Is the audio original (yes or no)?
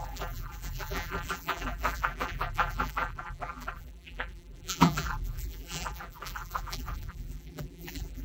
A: no